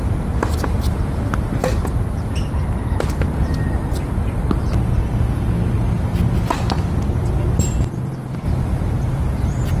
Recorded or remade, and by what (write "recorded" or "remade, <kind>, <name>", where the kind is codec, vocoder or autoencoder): recorded